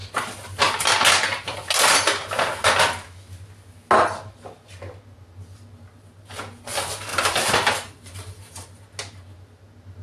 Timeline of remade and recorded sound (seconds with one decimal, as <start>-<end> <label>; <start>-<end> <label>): 0.0-7.1 recorded; 7.1-8.5 remade; 8.5-10.0 recorded

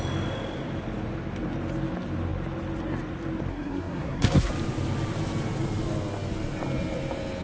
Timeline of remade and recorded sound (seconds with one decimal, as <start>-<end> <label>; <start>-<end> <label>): 0.0-3.5 recorded; 3.5-4.5 remade; 4.5-7.4 recorded

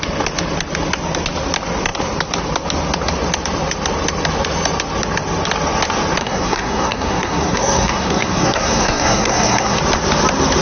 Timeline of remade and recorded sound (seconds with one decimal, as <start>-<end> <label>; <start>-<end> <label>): 0.0-6.2 recorded; 6.2-9.8 remade; 9.8-10.6 recorded

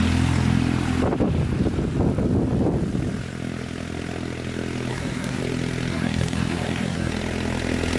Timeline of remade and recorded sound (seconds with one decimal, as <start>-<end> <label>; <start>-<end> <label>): 0.0-4.9 recorded; 4.9-5.4 remade; 5.4-5.9 recorded; 5.9-7.1 remade; 7.1-8.0 recorded

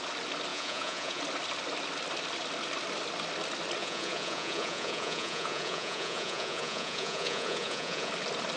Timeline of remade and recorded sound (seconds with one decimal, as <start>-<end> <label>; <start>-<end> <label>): 0.0-0.5 recorded; 0.5-1.2 remade; 1.2-3.8 recorded; 3.8-8.1 remade; 8.1-8.6 recorded